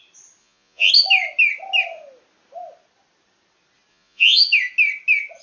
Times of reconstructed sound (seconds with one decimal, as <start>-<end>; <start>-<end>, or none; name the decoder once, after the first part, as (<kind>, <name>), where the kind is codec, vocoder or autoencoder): 0.4-0.9 (vocoder, Vocos); 3.9-4.4